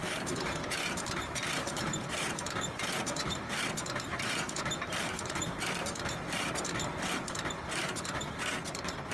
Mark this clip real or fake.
fake